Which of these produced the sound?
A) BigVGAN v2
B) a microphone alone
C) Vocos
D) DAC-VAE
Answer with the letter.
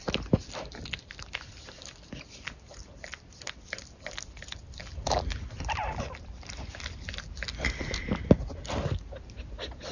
A